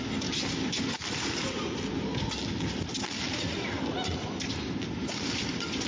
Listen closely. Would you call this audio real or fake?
real